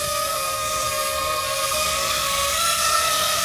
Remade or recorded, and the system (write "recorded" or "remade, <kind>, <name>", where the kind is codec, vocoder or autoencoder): remade, codec, SNAC